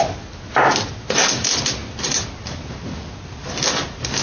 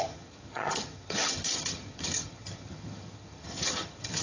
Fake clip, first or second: second